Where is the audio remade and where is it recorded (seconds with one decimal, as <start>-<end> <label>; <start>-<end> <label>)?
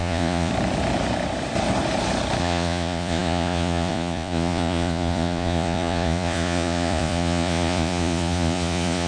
0.0-0.5 remade; 0.5-2.4 recorded; 2.4-9.1 remade